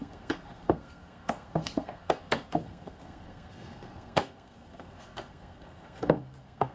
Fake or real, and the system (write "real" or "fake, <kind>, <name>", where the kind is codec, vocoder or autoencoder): fake, codec, SNAC